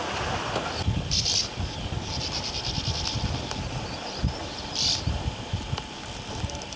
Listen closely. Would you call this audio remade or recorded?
recorded